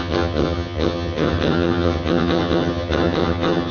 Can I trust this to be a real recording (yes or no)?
no